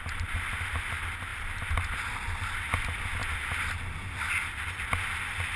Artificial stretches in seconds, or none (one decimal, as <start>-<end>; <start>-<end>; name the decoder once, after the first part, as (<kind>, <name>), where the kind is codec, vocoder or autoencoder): none